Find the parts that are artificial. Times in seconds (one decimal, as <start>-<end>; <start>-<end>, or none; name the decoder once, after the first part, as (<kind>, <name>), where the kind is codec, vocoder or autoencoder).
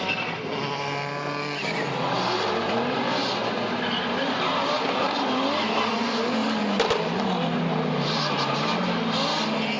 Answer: none